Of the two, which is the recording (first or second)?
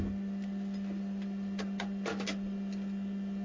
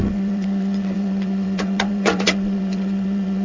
first